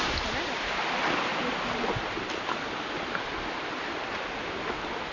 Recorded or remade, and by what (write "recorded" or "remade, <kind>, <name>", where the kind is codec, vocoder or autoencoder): recorded